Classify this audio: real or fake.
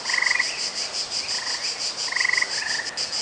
real